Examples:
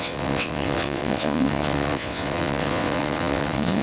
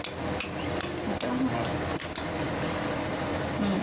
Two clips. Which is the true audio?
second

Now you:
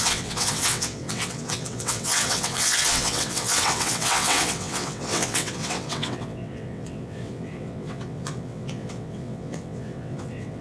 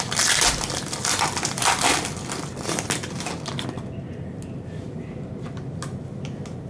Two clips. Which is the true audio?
second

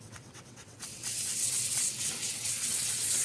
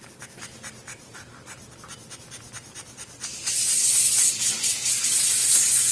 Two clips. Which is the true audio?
second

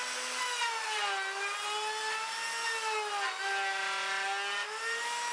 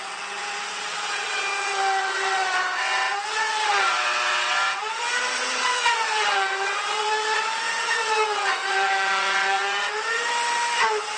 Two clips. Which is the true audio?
first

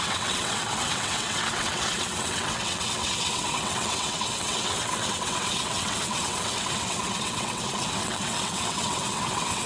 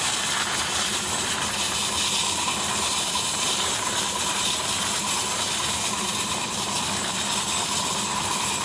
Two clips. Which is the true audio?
second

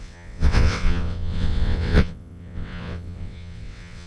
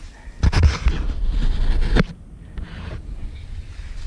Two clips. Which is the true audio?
second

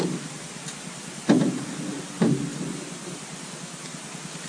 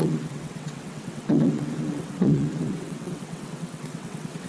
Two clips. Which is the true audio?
first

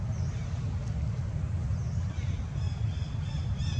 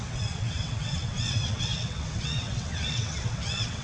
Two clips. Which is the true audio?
first